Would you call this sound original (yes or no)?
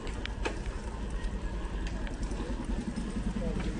yes